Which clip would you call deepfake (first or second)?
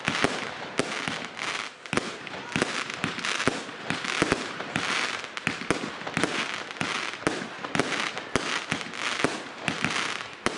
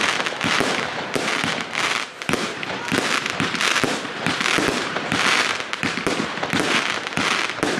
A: second